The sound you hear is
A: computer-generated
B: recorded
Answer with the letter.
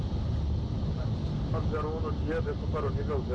B